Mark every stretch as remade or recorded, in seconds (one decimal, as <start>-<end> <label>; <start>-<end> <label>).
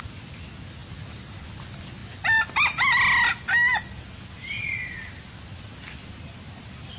0.0-7.0 recorded